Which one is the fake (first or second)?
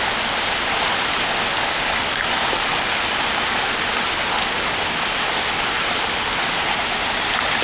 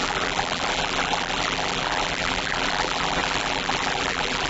second